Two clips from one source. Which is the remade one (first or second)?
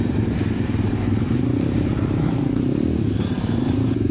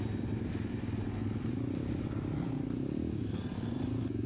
first